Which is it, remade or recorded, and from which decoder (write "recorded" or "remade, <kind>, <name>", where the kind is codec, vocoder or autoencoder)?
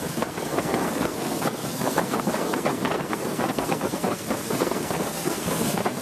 remade, codec, SNAC